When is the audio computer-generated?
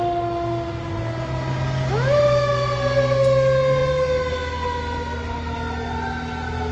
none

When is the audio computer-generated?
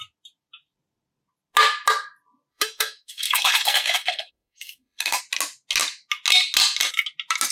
2.5-5.2 (codec, SNAC)